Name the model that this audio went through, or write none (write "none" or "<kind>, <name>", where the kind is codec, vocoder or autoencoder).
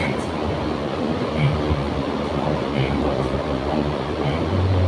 vocoder, Vocos